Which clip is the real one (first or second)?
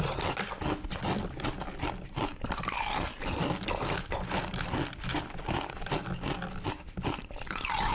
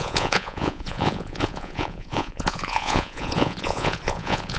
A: first